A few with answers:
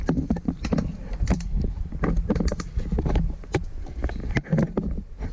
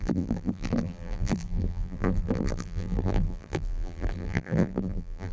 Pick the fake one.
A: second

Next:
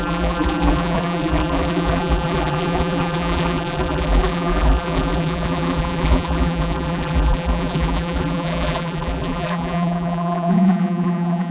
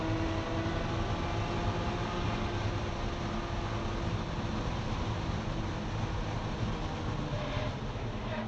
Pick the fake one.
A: first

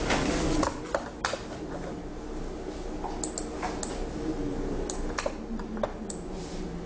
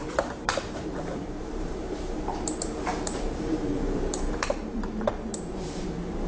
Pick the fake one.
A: second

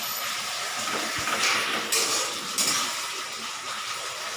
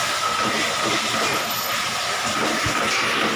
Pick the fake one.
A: first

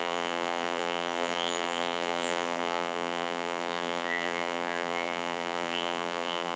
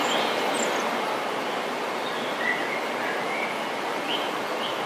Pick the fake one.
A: first